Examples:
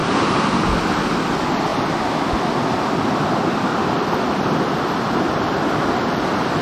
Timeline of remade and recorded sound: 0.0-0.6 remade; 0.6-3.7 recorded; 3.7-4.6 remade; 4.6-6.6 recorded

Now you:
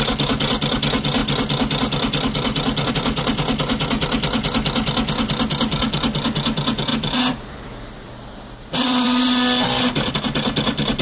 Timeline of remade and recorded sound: 0.0-6.9 recorded; 6.9-10.1 remade; 10.1-11.0 recorded